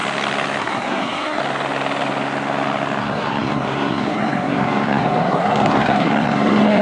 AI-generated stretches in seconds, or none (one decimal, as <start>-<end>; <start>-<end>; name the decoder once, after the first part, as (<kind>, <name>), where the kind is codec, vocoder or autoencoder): 0.6-1.4 (codec, SNAC); 3.0-6.8